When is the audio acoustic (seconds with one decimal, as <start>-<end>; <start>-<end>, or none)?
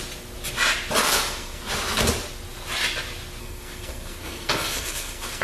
0.0-1.0; 1.6-3.4